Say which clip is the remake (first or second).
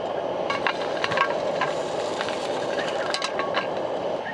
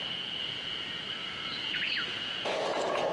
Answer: second